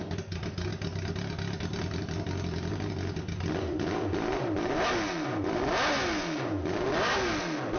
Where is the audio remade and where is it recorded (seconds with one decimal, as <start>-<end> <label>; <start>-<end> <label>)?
0.0-7.8 recorded